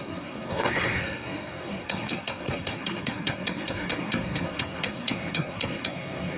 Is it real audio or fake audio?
fake